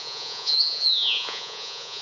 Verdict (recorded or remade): remade